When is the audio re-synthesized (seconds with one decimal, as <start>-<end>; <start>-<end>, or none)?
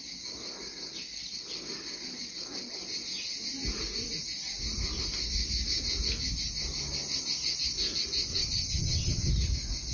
8.3-9.3